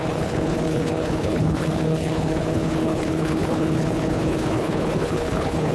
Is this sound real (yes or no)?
no